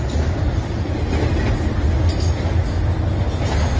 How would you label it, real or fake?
real